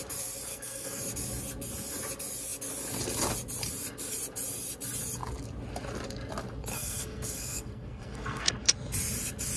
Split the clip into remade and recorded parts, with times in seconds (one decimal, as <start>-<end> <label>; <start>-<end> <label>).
0.0-0.5 recorded; 0.5-1.0 remade; 1.0-6.7 recorded; 6.7-8.5 remade; 8.5-9.6 recorded